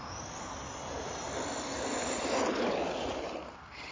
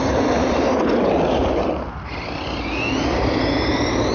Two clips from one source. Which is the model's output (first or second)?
first